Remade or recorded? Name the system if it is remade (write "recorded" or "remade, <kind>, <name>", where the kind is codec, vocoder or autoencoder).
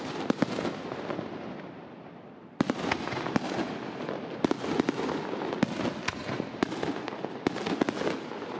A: recorded